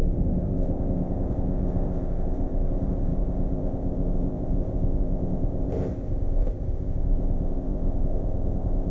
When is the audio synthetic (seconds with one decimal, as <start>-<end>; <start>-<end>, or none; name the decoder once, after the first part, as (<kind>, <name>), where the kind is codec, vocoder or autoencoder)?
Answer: 0.0-8.9 (codec, ZipCodec)